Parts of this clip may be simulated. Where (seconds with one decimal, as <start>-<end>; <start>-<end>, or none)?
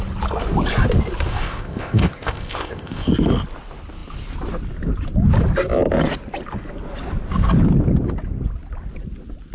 1.3-3.1